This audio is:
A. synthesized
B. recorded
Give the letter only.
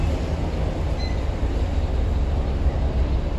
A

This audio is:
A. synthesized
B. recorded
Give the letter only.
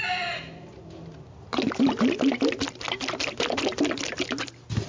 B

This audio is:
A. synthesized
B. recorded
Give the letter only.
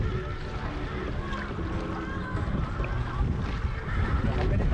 B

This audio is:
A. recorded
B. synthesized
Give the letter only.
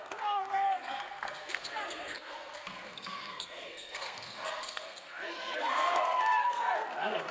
B